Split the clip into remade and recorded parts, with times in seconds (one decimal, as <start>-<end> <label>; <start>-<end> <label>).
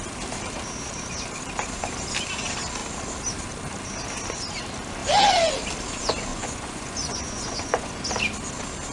0.0-6.3 recorded; 6.3-7.9 remade; 7.9-8.9 recorded